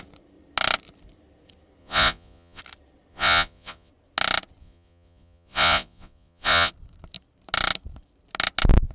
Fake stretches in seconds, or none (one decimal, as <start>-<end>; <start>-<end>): 1.8-2.6; 3.1-3.9; 4.6-6.7